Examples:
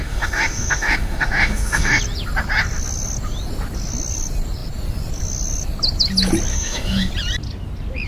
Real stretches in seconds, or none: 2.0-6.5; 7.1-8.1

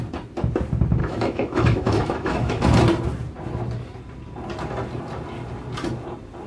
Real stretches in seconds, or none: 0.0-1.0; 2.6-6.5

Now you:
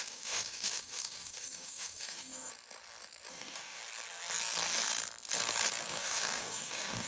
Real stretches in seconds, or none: 2.5-3.3; 3.8-5.9